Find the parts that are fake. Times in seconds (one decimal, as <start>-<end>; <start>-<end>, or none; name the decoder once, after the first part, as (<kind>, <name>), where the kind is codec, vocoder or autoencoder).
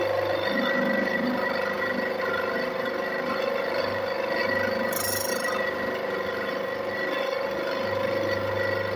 none